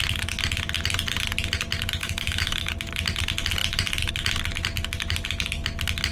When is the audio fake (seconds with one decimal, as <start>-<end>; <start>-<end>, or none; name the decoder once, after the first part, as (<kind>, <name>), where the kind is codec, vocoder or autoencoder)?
2.0-2.7 (autoencoder, DAC-VAE)

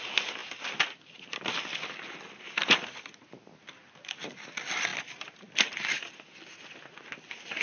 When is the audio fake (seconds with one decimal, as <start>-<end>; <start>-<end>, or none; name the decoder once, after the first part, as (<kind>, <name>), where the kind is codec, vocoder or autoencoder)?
none

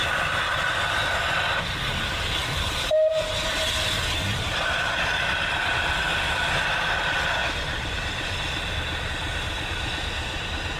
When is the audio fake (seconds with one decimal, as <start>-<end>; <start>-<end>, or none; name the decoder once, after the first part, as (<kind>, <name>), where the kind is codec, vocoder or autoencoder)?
2.4-3.6 (vocoder, BigVGAN v2)

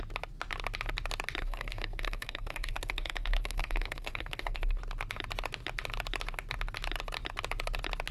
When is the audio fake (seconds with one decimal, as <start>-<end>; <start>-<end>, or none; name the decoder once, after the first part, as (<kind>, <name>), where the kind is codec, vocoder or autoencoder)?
1.4-4.8 (codec, SNAC)

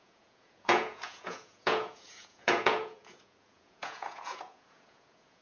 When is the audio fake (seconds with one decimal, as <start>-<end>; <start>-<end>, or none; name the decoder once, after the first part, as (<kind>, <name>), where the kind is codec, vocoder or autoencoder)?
0.0-5.4 (vocoder, Vocos)

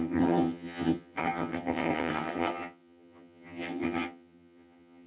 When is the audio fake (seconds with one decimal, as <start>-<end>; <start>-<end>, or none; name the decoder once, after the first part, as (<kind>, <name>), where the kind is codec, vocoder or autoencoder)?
0.0-5.1 (vocoder, HiFi-GAN)

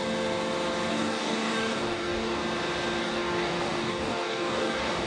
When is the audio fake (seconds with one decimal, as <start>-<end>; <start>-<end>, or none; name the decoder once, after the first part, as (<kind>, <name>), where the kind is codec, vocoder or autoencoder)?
0.9-2.4 (codec, DAC); 3.0-5.1

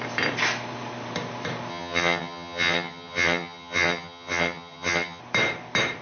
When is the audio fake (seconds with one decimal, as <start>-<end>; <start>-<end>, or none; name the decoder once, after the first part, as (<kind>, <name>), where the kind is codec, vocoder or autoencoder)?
1.7-5.2 (vocoder, HiFi-GAN)